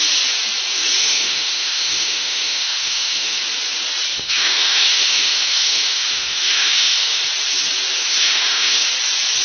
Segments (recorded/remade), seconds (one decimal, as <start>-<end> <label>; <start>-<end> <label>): 0.0-1.0 recorded; 1.0-3.4 remade; 3.4-4.1 recorded; 4.1-7.2 remade; 7.2-8.0 recorded; 8.0-8.9 remade; 8.9-9.4 recorded

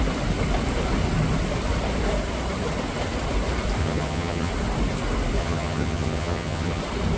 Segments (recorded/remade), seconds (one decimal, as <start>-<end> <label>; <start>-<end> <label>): 0.0-3.8 recorded; 3.8-4.5 remade; 4.5-5.4 recorded; 5.4-6.8 remade; 6.8-7.2 recorded

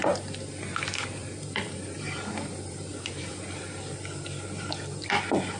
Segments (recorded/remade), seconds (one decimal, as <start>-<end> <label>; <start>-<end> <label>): 0.0-1.2 recorded; 1.2-3.8 remade; 3.8-5.6 recorded

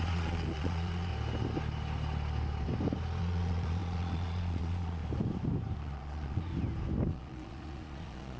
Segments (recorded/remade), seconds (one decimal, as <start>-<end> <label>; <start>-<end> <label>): 0.0-1.1 remade; 1.1-3.2 recorded; 3.2-5.0 remade; 5.0-5.8 recorded; 5.8-6.5 remade; 6.5-7.1 recorded; 7.1-8.4 remade

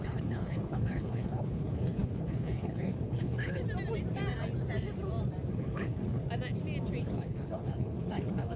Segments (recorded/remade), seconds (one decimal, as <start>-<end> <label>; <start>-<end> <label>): 0.0-3.6 remade; 3.6-5.5 recorded; 5.5-6.2 remade; 6.2-7.0 recorded; 7.0-8.6 remade

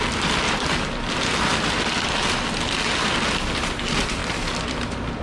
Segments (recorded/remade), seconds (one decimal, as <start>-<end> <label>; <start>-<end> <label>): 0.0-5.2 remade